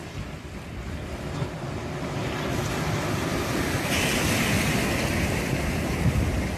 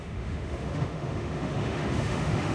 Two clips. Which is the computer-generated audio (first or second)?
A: second